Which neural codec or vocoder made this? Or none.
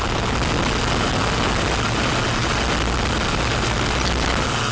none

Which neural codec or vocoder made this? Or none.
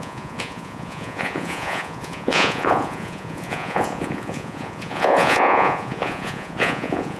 vocoder, Vocos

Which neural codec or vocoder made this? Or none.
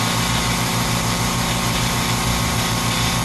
vocoder, BigVGAN v2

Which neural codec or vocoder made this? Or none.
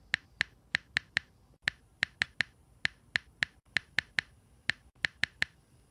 none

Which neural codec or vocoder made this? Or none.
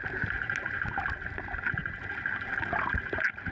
none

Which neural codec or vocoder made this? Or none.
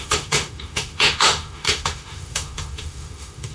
autoencoder, DAC-VAE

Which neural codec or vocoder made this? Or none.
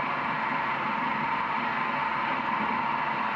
vocoder, BigVGAN v2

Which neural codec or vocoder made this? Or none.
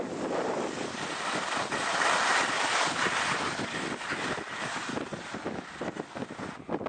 none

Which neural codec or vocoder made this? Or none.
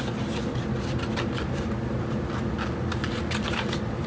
none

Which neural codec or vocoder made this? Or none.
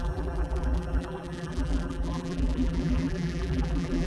vocoder, BigVGAN v2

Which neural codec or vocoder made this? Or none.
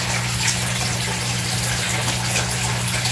none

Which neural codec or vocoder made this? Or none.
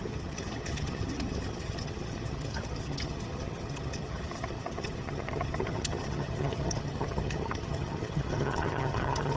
vocoder, HiFi-GAN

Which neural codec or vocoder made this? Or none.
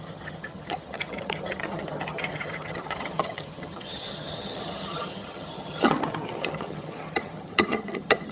vocoder, HiFi-GAN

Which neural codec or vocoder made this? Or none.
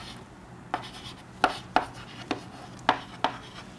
none